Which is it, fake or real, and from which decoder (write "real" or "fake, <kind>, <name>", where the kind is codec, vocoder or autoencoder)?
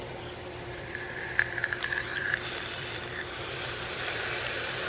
fake, vocoder, BigVGAN v2